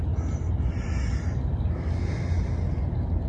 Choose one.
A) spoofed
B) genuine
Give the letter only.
B